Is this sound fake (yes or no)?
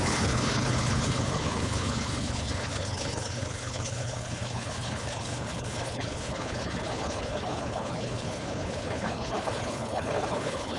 yes